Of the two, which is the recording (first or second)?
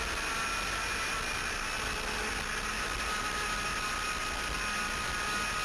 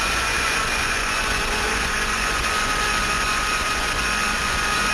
first